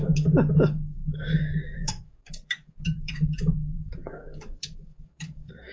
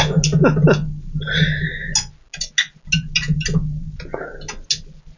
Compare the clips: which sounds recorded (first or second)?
second